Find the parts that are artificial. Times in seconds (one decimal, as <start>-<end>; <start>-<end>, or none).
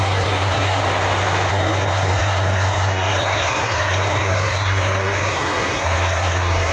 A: 0.0-0.8; 1.5-6.7